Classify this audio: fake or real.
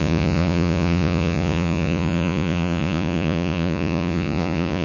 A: fake